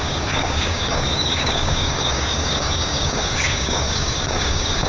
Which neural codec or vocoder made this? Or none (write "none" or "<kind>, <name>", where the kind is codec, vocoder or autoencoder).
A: codec, DAC